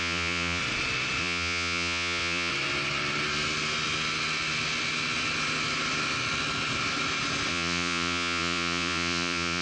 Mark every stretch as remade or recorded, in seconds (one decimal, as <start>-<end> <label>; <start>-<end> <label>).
0.0-0.6 remade; 0.6-1.2 recorded; 1.2-2.5 remade; 2.5-7.5 recorded; 7.5-9.6 remade